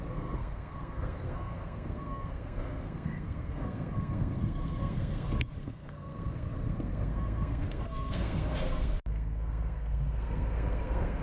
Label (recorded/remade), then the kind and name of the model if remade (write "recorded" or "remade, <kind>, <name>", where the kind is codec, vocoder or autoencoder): remade, codec, SNAC